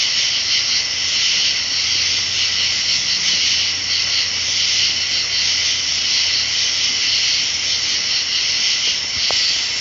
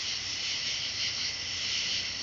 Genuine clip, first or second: first